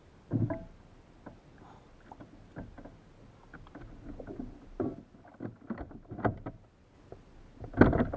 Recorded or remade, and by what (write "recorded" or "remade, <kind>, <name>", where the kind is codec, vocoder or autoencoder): recorded